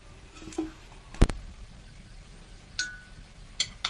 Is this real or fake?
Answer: real